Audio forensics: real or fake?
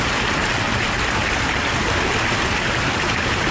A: real